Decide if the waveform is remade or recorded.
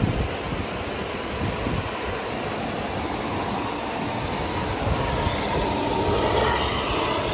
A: recorded